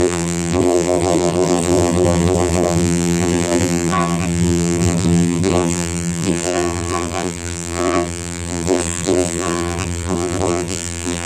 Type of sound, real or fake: fake